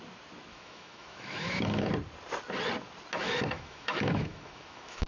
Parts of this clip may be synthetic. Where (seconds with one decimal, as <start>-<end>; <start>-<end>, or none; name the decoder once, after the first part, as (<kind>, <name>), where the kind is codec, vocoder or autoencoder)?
0.5-1.9 (autoencoder, DAC-VAE); 3.2-5.1